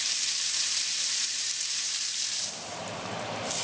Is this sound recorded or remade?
remade